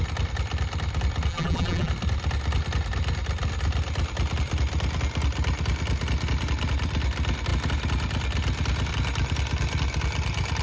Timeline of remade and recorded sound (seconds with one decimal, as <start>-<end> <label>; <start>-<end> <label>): 0.0-1.3 recorded; 1.3-1.9 remade; 1.9-10.6 recorded